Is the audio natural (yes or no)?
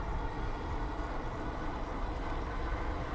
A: yes